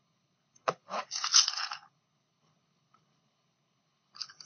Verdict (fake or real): fake